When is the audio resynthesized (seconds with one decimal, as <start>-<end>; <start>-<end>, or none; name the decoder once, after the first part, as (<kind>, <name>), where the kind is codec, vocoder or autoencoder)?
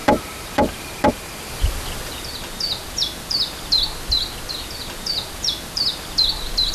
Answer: 0.0-1.1 (vocoder, BigVGAN v2)